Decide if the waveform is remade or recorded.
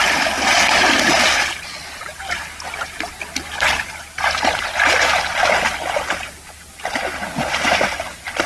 recorded